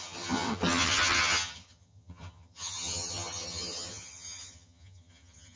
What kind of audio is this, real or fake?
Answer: fake